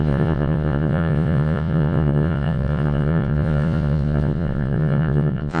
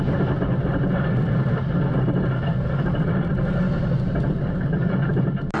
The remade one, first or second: first